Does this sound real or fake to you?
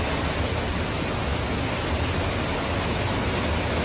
real